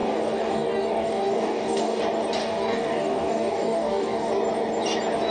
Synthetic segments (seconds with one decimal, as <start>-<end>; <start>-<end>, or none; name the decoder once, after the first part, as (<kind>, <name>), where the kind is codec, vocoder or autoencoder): 0.0-2.0 (codec, DAC); 2.4-4.3